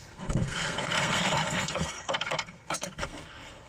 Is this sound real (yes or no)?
no